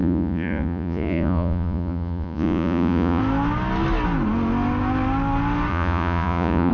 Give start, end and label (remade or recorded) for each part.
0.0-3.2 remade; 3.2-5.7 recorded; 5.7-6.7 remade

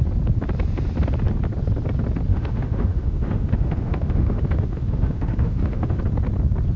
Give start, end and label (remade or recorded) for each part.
0.0-2.3 recorded; 2.3-6.0 remade; 6.0-6.8 recorded

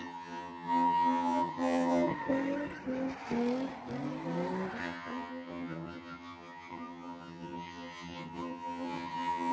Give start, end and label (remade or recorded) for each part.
0.0-2.1 remade; 2.1-4.8 recorded; 4.8-9.5 remade

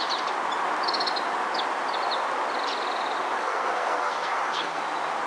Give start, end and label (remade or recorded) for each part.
0.0-3.4 recorded; 3.4-4.8 remade; 4.8-5.3 recorded

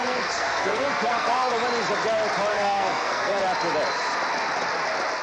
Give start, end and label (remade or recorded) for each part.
0.0-1.5 remade; 1.5-2.5 recorded; 2.5-3.4 remade; 3.4-5.2 recorded

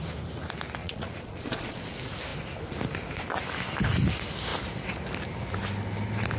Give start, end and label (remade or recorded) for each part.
0.0-0.8 recorded; 0.8-1.9 remade; 1.9-6.4 recorded

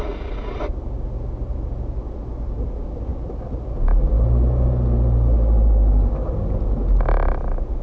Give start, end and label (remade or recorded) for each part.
0.0-7.8 recorded